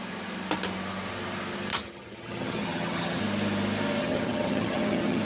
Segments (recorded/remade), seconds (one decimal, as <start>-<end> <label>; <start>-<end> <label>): 0.0-1.7 recorded; 1.7-3.2 remade; 3.2-4.0 recorded; 4.0-5.2 remade